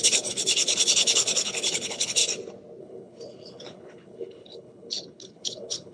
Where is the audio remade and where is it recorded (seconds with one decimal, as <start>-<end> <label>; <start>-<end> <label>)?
0.0-2.2 remade; 2.2-2.8 recorded; 2.8-5.9 remade